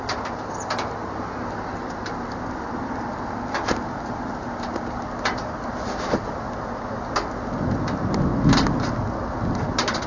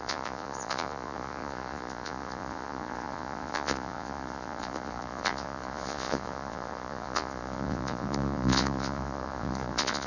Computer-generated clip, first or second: second